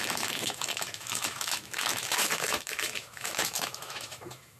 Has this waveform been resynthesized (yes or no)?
yes